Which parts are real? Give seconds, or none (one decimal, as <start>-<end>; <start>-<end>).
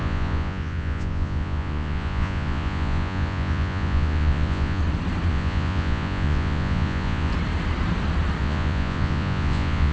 4.8-5.3; 7.3-8.4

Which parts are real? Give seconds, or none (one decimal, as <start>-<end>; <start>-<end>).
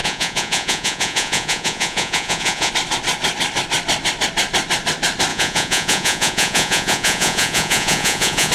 2.7-5.3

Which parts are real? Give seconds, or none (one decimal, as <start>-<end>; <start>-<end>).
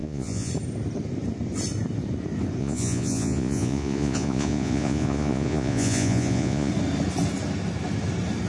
0.5-2.6; 6.7-8.5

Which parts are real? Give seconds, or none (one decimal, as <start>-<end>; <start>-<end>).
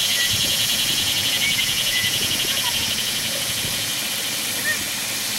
3.9-5.4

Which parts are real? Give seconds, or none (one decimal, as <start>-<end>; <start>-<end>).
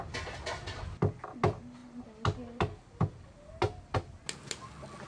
0.0-5.1